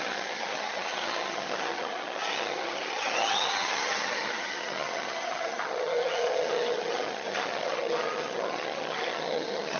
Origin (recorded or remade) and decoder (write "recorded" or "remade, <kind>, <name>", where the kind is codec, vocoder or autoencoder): remade, vocoder, HiFi-GAN